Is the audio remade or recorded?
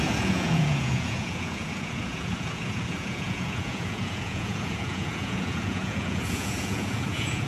remade